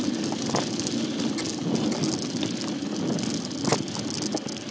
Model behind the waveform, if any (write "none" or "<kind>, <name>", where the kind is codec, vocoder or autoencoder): none